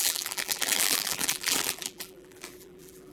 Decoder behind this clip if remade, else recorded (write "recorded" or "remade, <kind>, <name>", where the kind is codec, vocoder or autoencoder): remade, vocoder, BigVGAN v2